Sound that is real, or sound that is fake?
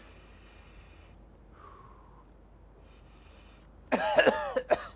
real